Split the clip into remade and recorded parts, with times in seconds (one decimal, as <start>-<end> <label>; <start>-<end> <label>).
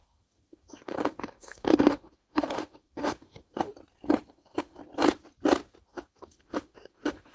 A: 0.0-3.7 remade; 3.7-4.3 recorded; 4.3-4.8 remade; 4.8-5.8 recorded; 5.8-7.3 remade